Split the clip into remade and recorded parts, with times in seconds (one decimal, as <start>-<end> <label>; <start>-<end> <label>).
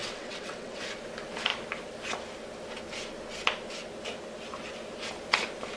0.0-0.9 remade; 0.9-5.8 recorded